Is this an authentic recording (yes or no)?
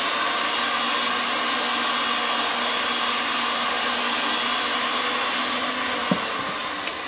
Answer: yes